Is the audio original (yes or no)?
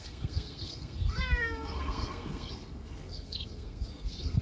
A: no